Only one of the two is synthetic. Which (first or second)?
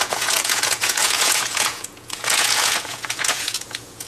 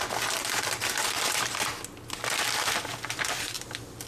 first